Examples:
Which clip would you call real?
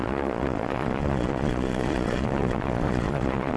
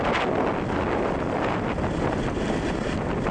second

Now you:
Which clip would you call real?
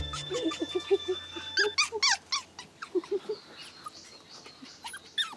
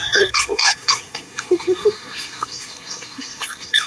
first